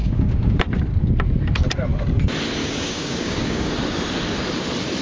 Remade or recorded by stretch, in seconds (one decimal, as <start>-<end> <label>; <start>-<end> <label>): 0.0-0.6 remade; 0.6-2.6 recorded; 2.6-3.7 remade; 3.7-5.0 recorded